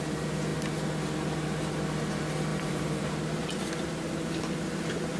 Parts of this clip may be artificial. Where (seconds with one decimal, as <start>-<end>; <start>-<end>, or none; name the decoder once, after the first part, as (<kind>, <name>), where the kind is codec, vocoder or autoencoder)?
2.5-3.0 (vocoder, BigVGAN v2)